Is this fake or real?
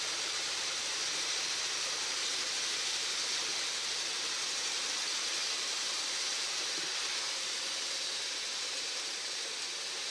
fake